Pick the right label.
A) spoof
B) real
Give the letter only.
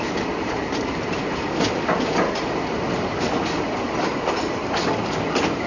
B